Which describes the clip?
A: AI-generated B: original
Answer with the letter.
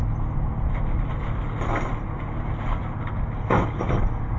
B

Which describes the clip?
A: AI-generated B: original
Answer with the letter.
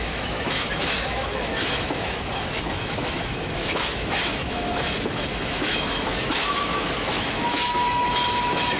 A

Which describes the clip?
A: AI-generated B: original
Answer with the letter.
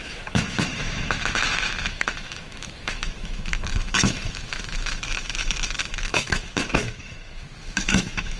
A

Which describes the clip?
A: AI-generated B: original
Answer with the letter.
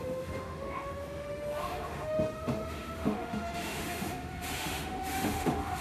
A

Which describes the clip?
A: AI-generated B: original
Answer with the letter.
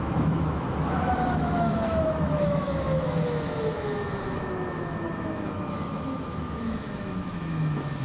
A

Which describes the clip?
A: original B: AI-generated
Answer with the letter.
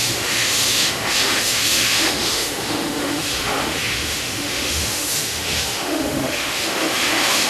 B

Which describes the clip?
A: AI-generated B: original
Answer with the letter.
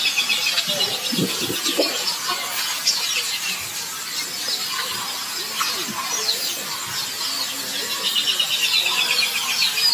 B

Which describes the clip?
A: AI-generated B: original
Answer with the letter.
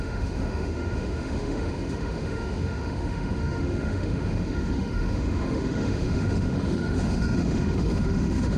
A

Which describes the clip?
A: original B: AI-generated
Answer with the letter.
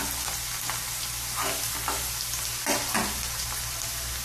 A